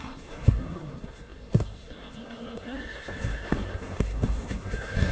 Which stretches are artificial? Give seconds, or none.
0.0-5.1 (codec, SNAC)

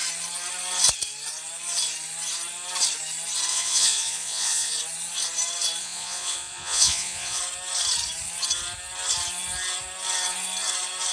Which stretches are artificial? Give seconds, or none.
3.5-4.7 (vocoder, Vocos); 5.8-7.4

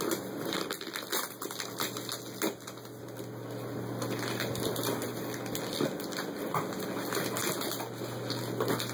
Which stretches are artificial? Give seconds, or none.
none

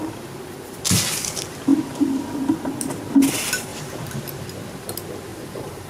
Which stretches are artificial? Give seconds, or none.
1.7-2.4 (vocoder, BigVGAN v2); 3.7-4.2; 5.3-5.9